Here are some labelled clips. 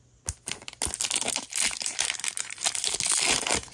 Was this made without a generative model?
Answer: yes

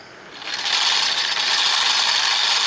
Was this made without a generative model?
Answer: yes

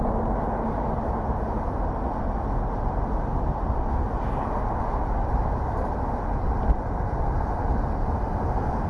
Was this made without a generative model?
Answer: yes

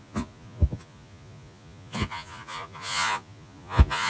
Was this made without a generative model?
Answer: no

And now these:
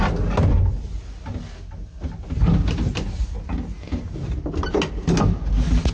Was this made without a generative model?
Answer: yes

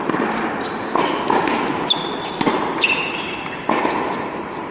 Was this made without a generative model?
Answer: yes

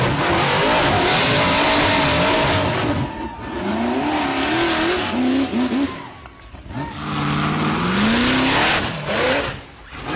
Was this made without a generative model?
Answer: yes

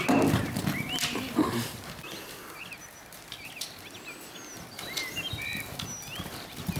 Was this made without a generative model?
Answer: yes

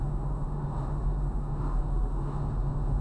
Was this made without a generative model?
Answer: no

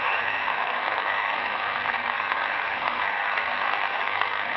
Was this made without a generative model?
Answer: no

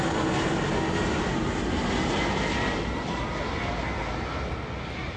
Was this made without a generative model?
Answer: yes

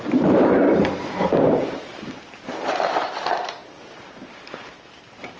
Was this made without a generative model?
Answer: no